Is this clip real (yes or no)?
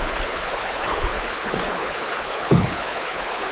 no